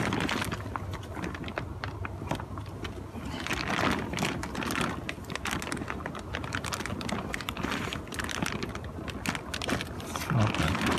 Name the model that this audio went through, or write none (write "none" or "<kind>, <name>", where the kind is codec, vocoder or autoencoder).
none